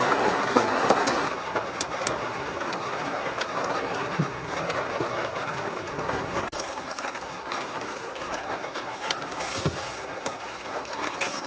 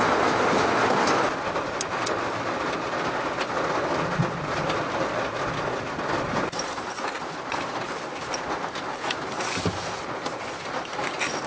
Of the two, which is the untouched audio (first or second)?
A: second